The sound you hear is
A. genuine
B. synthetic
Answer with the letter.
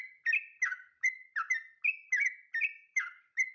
A